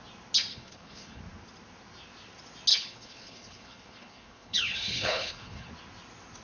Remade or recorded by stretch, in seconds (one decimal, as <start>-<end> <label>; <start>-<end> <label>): 0.0-0.5 recorded; 0.5-1.2 remade; 1.2-2.7 recorded; 2.7-5.7 remade; 5.7-6.4 recorded